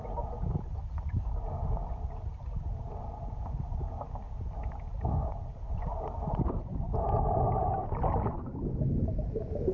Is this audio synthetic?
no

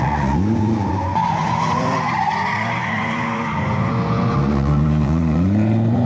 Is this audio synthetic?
yes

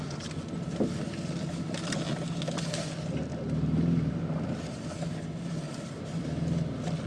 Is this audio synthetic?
no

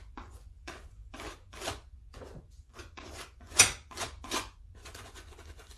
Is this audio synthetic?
yes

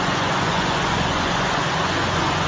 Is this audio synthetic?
yes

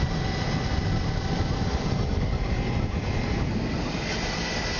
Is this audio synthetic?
no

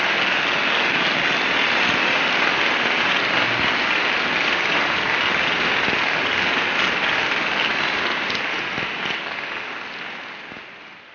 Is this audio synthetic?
no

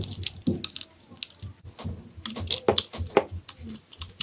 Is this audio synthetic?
no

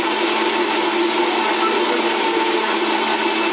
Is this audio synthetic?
no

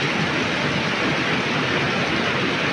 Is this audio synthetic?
no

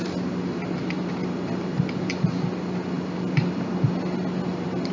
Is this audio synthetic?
no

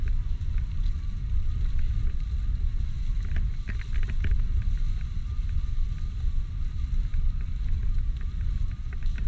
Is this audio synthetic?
no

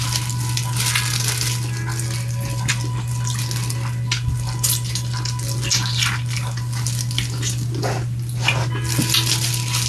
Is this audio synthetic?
no